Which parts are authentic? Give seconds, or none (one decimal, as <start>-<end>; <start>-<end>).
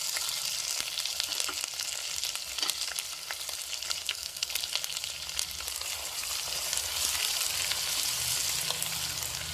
0.0-4.0; 4.5-9.5